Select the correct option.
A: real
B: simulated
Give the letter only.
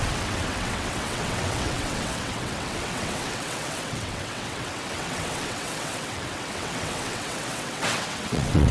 B